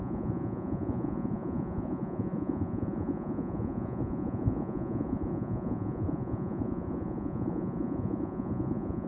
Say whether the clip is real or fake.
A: fake